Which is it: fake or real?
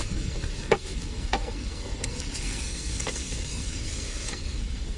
fake